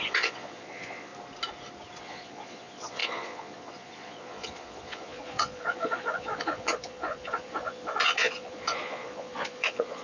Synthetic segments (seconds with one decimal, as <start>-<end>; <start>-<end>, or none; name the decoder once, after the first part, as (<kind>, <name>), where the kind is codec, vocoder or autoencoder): 0.0-1.1 (vocoder, Vocos); 2.0-10.0